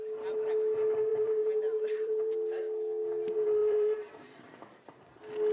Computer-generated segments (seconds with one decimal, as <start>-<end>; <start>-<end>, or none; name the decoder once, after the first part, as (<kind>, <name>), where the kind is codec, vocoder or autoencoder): 1.1-2.6 (vocoder, BigVGAN v2); 3.6-4.6